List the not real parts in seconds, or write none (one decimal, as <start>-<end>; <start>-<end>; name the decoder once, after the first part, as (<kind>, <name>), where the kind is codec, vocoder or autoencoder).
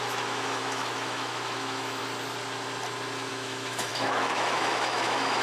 0.0-2.0 (autoencoder, DAC-VAE); 3.3-5.4